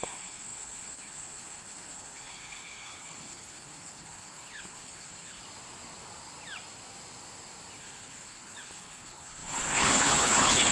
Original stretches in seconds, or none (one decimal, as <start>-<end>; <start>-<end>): 5.4-7.8